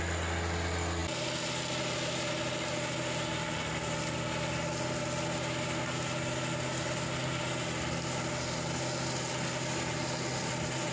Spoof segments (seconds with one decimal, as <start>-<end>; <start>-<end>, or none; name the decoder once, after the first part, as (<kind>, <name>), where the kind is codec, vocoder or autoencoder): none